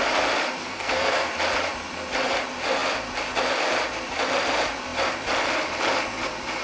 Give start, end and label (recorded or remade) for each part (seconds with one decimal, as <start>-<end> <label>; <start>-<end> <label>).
0.0-0.6 recorded; 0.6-1.3 remade; 1.3-6.6 recorded